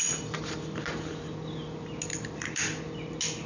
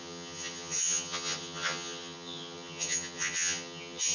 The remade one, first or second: second